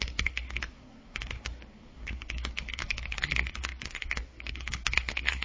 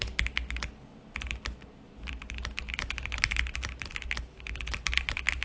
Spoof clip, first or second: first